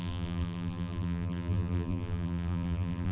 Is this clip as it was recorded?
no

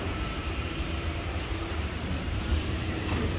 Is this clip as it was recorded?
no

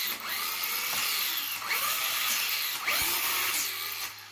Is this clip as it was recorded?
yes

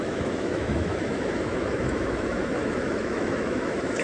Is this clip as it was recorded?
no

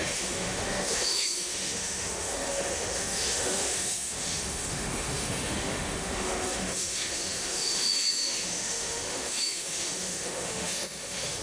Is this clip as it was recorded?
no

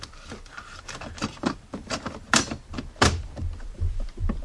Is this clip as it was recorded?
no